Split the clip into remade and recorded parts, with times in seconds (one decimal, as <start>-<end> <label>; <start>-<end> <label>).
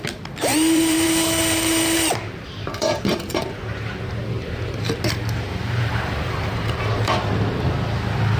0.0-0.5 recorded; 0.5-4.8 remade; 4.8-5.6 recorded; 5.6-7.3 remade; 7.3-8.4 recorded